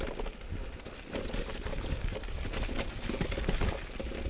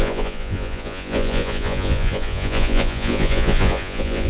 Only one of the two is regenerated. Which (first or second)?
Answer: second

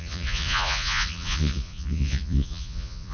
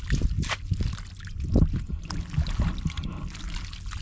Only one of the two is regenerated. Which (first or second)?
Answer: first